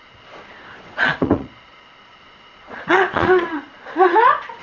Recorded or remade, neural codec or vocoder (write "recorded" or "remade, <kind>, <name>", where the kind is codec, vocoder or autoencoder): remade, vocoder, Vocos